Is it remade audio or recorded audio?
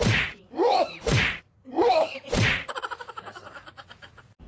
remade